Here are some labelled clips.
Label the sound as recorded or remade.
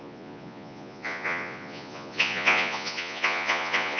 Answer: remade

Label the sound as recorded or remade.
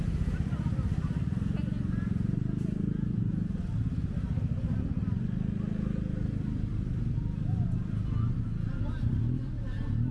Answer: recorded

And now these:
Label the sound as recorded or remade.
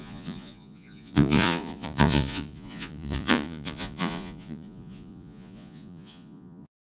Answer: remade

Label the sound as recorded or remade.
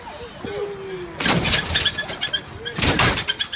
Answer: recorded